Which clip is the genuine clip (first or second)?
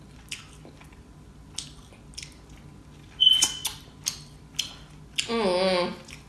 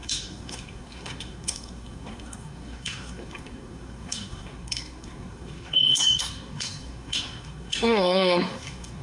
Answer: first